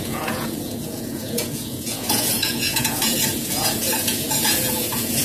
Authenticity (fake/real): fake